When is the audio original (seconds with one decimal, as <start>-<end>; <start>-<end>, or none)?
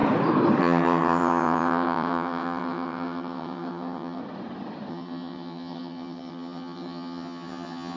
0.0-0.6; 4.2-4.9